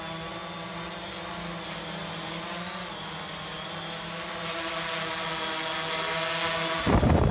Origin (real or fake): real